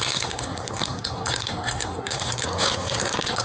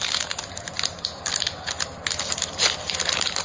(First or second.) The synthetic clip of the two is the first